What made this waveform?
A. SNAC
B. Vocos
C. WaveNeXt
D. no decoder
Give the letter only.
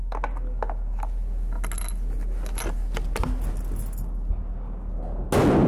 D